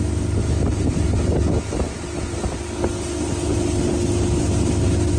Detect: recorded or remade recorded